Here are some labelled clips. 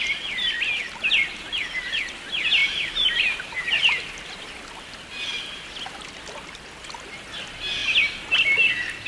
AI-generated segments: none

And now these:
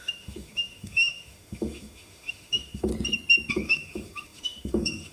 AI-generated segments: 0.0-2.9 (autoencoder, DAC-VAE); 3.5-5.1

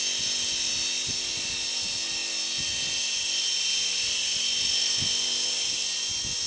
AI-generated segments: none